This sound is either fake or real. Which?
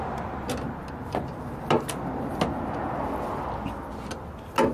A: real